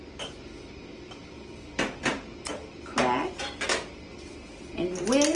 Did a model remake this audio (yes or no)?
no